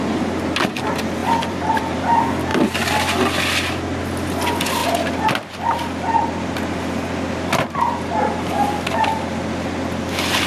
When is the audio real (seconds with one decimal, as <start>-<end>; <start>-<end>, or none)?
0.0-1.2; 2.0-10.5